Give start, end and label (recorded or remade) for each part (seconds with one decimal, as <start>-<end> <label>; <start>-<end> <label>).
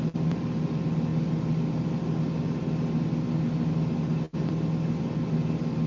0.0-5.9 recorded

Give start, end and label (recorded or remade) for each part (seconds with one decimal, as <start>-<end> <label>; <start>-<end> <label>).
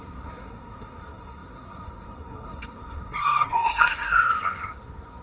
0.0-5.2 remade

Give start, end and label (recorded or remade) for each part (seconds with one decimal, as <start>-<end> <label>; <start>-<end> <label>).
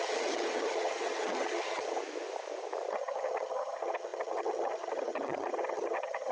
0.0-2.0 remade; 2.0-2.9 recorded; 2.9-6.3 remade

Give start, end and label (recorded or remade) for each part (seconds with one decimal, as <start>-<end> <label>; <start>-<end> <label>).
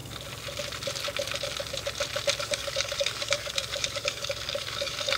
0.0-2.4 recorded; 2.4-5.2 remade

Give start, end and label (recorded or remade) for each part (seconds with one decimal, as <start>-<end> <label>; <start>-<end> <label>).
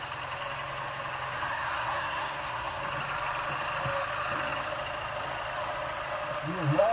0.0-1.5 recorded; 1.5-2.8 remade; 2.8-6.9 recorded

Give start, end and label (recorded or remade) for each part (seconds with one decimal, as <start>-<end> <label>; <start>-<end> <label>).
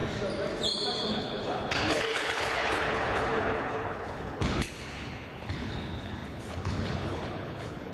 0.0-1.1 recorded; 1.1-7.9 remade